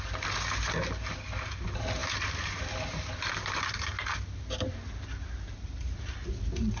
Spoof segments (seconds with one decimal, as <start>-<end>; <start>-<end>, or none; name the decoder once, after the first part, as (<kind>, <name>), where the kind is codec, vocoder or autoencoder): none